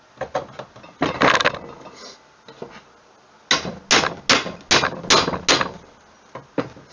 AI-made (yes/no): no